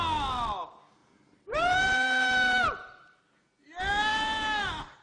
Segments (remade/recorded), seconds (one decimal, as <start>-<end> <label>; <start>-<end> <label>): 0.0-1.0 recorded; 1.0-3.2 remade; 3.2-4.1 recorded; 4.1-5.0 remade